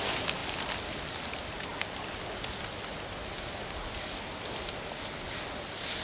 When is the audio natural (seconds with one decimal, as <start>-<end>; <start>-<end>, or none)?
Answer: 0.0-6.0